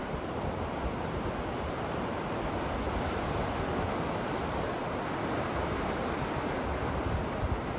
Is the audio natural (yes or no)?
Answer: yes